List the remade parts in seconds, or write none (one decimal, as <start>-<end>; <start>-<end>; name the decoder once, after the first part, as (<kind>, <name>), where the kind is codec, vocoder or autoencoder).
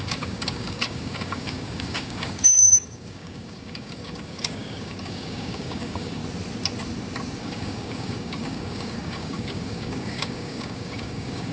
0.0-6.2 (codec, DAC); 7.4-11.5